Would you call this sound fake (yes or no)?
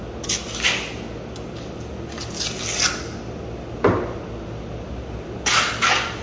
no